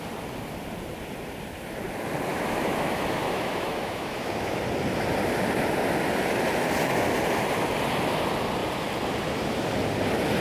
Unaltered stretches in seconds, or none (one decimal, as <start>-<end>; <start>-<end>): 0.0-2.3; 4.6-10.4